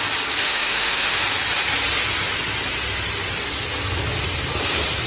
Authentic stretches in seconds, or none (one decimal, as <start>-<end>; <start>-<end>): 0.0-0.4; 1.2-5.1